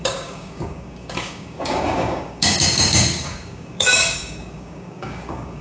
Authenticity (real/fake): fake